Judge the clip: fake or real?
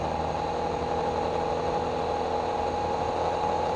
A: real